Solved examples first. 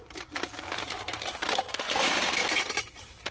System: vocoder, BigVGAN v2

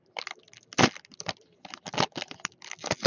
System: none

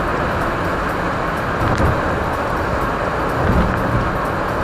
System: none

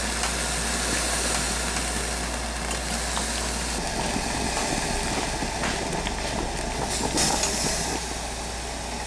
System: none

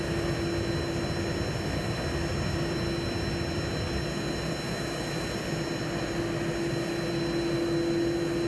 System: none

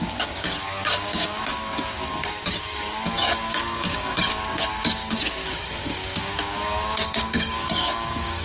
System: codec, DAC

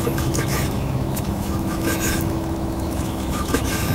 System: autoencoder, DAC-VAE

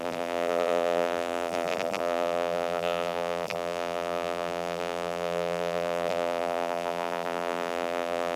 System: vocoder, BigVGAN v2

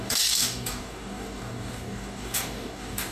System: codec, DAC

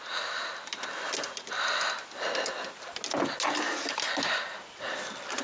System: none